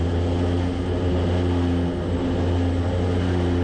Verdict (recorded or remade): recorded